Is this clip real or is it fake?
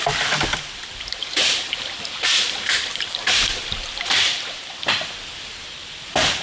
fake